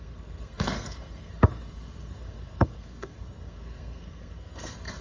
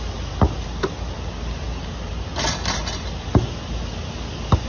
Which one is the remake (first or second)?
first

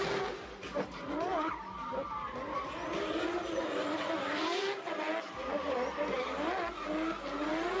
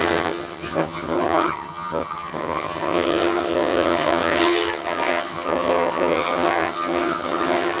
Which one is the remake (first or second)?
second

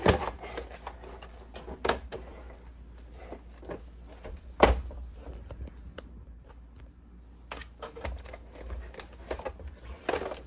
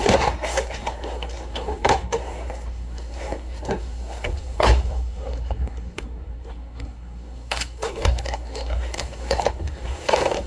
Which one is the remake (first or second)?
second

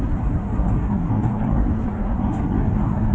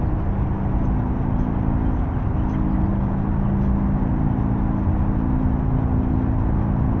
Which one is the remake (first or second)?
first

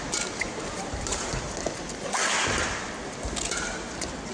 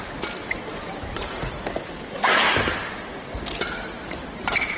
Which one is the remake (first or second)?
second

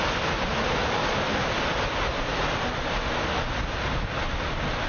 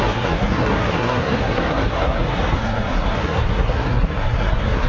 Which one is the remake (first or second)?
second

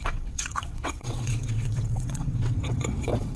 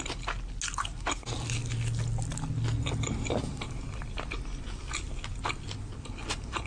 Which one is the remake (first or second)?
first